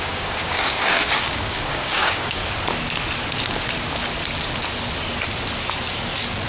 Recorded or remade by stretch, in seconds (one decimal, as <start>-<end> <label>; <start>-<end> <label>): 0.0-2.4 remade; 2.4-6.5 recorded